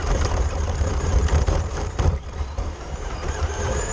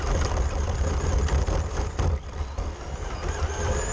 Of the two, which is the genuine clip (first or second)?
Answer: second